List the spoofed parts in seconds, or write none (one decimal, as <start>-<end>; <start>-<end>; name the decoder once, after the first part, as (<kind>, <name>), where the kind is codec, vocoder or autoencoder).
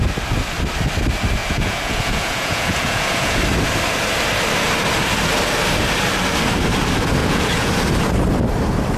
1.4-3.4 (vocoder, Vocos); 7.2-7.7